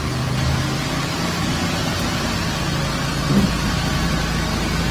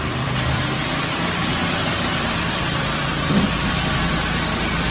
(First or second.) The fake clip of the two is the second